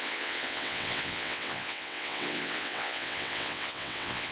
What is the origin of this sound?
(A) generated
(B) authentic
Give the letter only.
A